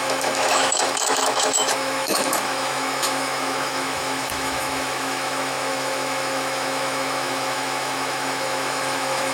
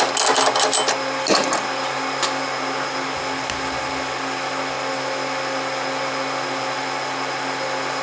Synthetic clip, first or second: first